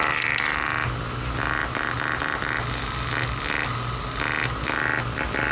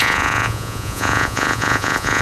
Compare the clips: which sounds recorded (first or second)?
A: first